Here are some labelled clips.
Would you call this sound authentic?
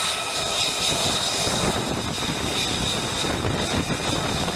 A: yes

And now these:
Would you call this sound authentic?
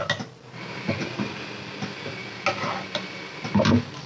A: yes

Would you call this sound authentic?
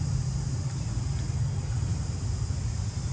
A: yes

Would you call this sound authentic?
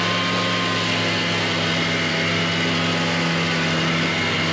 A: yes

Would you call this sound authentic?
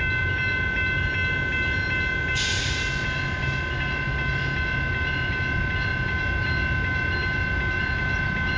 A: yes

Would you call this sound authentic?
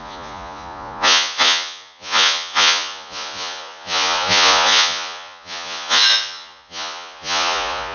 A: no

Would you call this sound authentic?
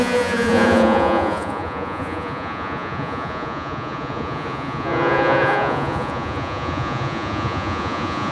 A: no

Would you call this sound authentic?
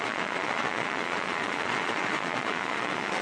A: no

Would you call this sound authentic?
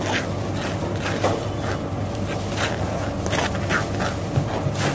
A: yes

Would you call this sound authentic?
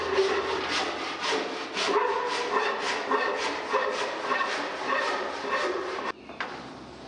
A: yes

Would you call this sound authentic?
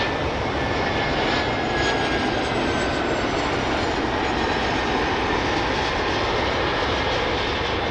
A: yes